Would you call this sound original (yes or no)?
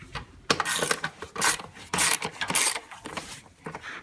no